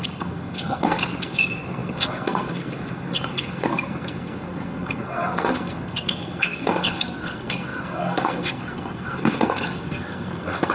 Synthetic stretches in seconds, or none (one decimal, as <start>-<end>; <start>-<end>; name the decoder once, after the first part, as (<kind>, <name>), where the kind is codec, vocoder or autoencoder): 0.0-10.7 (codec, SNAC)